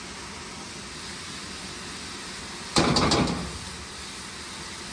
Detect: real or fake real